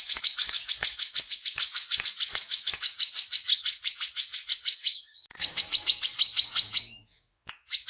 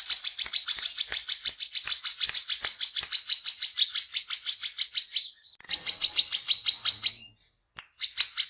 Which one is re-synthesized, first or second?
first